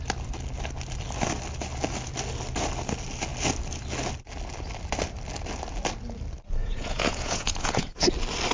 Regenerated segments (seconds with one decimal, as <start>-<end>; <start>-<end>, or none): 6.6-8.0